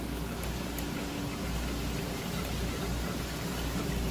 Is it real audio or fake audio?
real